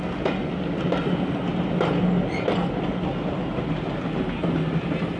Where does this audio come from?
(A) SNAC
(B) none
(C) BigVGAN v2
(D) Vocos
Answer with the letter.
B